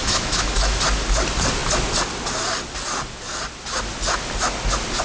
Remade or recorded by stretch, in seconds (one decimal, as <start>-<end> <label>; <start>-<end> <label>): 0.0-0.8 remade; 0.8-5.0 recorded